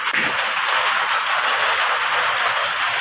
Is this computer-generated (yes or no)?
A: no